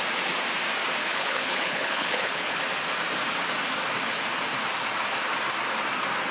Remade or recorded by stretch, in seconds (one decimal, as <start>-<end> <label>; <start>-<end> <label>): 0.0-1.0 recorded; 1.0-2.6 remade; 2.6-6.3 recorded